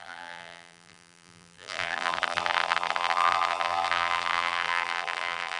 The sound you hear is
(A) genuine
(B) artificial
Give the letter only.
B